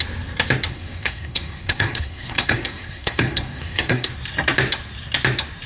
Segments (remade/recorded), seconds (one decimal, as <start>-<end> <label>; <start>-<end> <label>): 0.0-0.7 recorded; 0.7-4.1 remade; 4.1-5.7 recorded